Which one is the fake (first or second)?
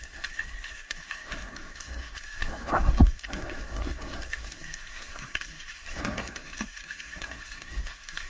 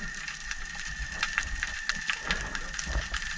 first